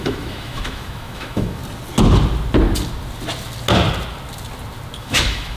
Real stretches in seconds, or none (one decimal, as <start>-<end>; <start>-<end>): 1.6-5.0